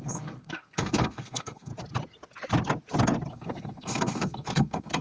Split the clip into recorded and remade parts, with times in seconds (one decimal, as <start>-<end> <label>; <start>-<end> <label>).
0.0-1.7 remade; 1.7-3.3 recorded; 3.3-5.0 remade